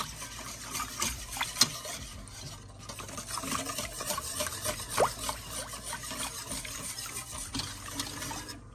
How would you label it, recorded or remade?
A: recorded